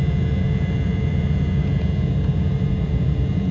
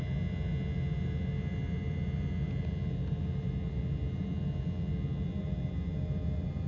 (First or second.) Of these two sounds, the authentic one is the second